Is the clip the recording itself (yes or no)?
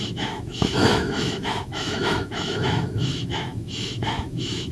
no